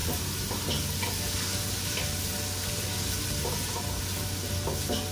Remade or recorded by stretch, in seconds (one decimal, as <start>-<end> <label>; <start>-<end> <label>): 0.0-5.1 recorded